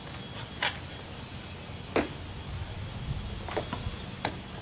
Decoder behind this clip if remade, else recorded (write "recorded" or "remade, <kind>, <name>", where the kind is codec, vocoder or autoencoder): recorded